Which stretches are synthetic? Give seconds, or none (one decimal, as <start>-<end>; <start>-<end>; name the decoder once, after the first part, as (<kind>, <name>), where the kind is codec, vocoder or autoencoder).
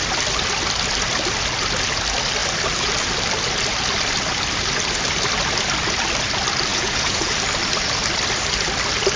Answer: 6.7-7.3 (vocoder, Vocos)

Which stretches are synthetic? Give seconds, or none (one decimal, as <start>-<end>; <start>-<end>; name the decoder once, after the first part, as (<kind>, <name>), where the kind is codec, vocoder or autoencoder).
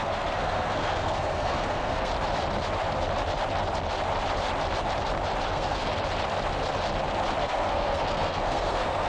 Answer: 0.0-2.1 (codec, SNAC); 5.5-5.9; 7.4-9.1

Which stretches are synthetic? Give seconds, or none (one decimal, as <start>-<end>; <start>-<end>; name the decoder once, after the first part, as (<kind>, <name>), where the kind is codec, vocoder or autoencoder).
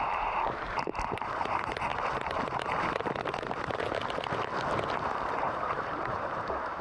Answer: 0.0-1.9 (vocoder, BigVGAN v2); 5.5-6.8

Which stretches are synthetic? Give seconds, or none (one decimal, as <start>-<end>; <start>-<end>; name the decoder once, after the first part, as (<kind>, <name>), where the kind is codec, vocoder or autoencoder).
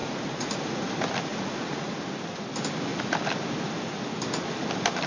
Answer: 0.0-0.9 (vocoder, Vocos); 1.3-1.9